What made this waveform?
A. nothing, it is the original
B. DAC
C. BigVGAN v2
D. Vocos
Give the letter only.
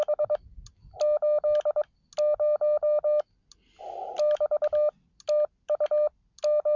A